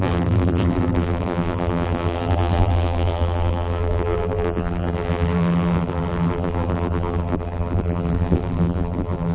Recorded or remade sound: remade